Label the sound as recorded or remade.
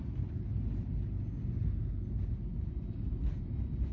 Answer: recorded